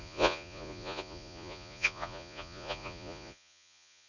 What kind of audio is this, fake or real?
fake